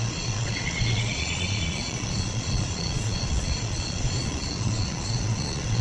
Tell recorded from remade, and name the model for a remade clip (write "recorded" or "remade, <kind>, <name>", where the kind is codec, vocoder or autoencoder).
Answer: remade, vocoder, Vocos